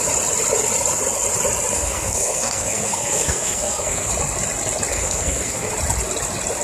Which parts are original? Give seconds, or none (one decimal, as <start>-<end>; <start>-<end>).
0.0-1.7; 4.1-4.9; 5.7-6.6